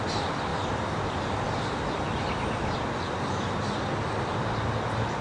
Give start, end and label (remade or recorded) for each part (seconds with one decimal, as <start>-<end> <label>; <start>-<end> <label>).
0.0-5.2 recorded